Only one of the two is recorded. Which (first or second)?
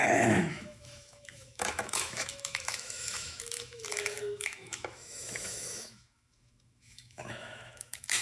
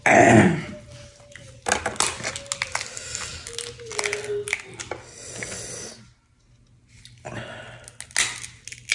second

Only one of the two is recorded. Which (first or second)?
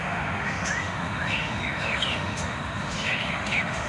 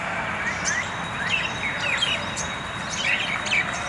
second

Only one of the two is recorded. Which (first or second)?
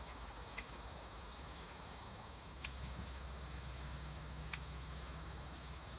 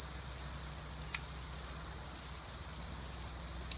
second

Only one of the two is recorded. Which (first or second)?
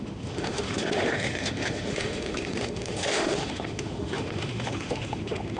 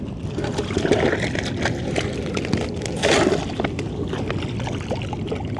second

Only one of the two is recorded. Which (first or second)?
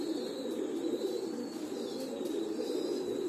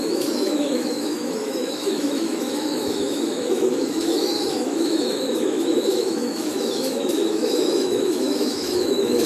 first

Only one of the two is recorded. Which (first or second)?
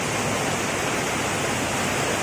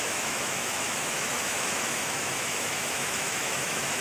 first